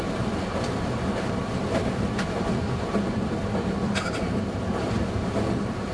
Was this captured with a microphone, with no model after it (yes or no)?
no